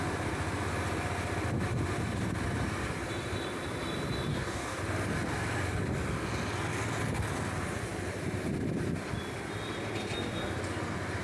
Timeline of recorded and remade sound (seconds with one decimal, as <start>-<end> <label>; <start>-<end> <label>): 0.0-4.3 recorded; 4.3-4.8 remade; 4.8-11.2 recorded